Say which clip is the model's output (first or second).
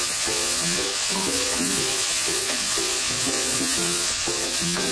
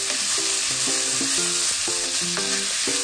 first